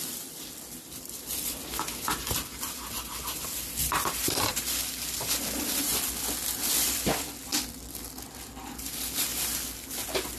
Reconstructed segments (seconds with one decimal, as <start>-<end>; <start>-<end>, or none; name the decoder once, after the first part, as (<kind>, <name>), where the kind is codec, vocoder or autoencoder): 0.0-5.9 (vocoder, BigVGAN v2); 6.6-7.5; 8.4-9.3